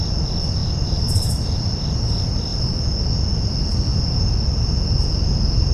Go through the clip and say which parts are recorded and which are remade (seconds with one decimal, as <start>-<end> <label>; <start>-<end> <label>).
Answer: 0.0-0.6 recorded; 0.6-1.7 remade; 1.7-5.7 recorded